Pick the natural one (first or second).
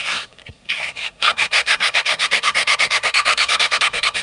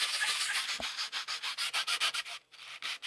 second